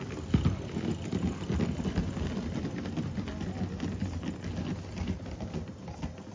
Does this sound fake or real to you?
real